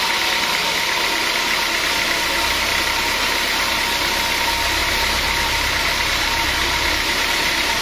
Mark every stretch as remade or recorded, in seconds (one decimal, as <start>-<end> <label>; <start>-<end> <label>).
0.0-2.7 recorded; 2.7-3.8 remade; 3.8-4.8 recorded; 4.8-7.8 remade